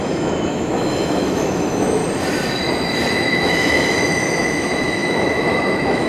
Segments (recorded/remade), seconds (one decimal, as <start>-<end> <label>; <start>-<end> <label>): 0.0-2.0 remade; 2.0-3.1 recorded; 3.1-6.1 remade